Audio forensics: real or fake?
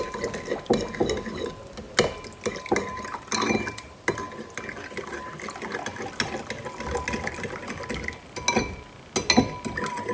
real